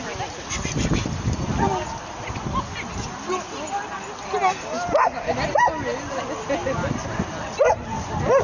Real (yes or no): yes